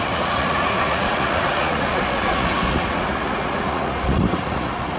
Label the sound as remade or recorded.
remade